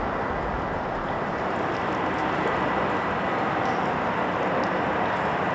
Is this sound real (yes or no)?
yes